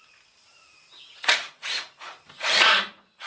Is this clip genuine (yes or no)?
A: no